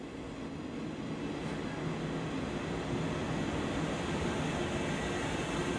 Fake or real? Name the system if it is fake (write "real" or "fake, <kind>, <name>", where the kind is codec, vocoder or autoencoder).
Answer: real